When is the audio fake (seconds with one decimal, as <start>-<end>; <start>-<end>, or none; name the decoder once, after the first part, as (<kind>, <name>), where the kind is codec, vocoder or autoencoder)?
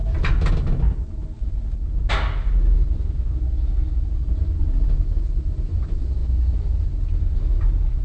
none